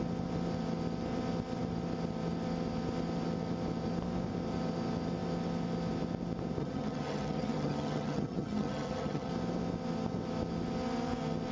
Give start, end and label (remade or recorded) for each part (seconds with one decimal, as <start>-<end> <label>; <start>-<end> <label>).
0.0-6.6 recorded; 6.6-9.3 remade; 9.3-11.5 recorded